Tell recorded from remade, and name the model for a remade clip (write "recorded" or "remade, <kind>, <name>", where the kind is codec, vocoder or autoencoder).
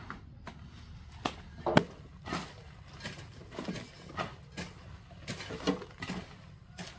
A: recorded